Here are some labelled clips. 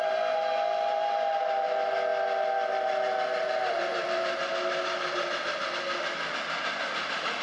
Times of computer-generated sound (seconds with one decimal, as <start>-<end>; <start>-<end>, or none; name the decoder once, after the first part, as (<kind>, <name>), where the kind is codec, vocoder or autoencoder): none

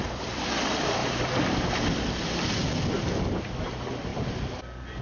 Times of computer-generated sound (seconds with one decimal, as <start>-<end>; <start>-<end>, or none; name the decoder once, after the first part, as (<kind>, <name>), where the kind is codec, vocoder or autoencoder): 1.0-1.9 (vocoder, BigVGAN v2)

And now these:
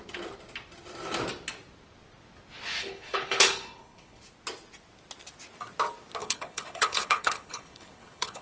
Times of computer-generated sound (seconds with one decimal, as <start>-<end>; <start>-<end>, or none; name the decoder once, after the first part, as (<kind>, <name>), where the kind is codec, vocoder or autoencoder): 2.8-4.2 (codec, HILCodec); 6.2-8.4